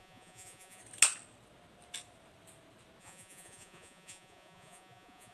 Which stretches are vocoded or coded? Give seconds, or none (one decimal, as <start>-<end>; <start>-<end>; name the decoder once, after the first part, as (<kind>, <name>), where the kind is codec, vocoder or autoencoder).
0.0-0.8 (vocoder, Vocos); 3.0-5.3